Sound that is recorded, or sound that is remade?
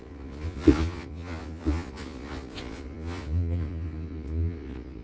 remade